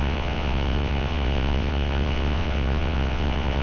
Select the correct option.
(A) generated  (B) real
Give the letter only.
A